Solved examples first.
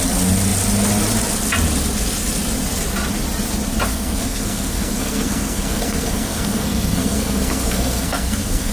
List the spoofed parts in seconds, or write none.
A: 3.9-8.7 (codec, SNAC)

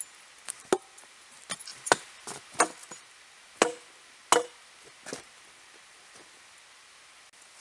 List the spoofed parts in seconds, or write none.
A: none

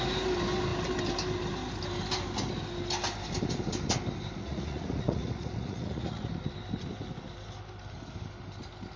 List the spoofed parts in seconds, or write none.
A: 4.4-6.3 (vocoder, Vocos)

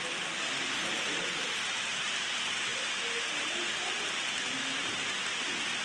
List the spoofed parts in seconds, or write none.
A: none

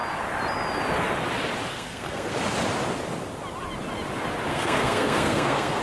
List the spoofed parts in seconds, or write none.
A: 1.7-2.3 (codec, SNAC); 4.5-5.8